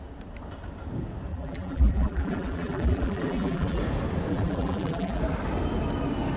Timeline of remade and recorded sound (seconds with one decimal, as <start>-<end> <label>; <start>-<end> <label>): 0.0-1.3 recorded; 1.3-3.8 remade; 3.8-4.3 recorded; 4.3-5.2 remade; 5.2-6.4 recorded